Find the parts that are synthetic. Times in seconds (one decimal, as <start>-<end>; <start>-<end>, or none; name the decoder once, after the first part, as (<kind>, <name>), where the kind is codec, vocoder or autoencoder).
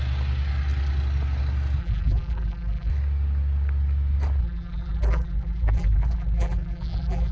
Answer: 1.8-2.9 (vocoder, BigVGAN v2); 4.4-7.3